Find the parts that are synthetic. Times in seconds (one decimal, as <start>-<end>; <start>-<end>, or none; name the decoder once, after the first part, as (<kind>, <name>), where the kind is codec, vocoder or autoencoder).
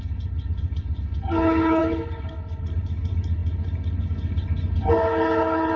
0.0-5.8 (codec, HILCodec)